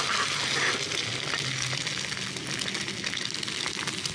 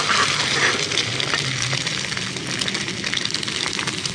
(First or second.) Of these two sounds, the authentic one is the first